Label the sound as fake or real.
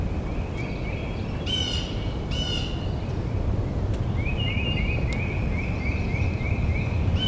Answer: real